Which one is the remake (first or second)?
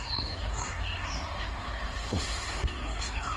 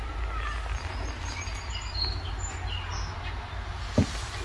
first